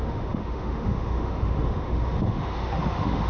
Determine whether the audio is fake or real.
fake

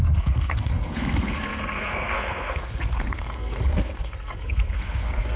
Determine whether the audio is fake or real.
fake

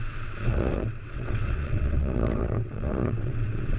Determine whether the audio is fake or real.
fake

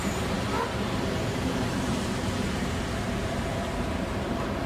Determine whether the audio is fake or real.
fake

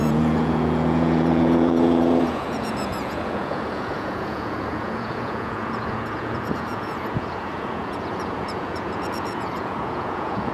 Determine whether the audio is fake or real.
fake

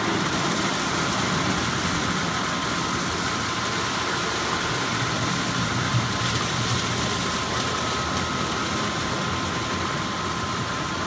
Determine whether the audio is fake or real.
real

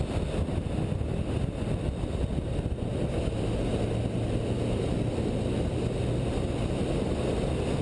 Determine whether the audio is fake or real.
real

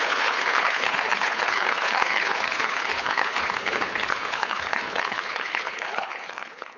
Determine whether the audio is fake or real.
fake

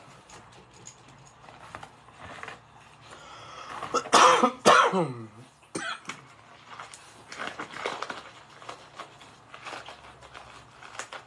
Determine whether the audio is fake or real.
real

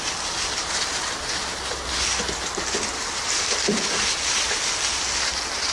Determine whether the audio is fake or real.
real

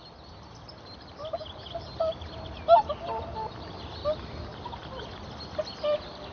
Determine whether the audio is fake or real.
real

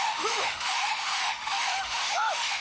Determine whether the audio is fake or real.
fake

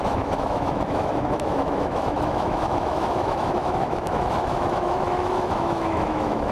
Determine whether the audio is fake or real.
fake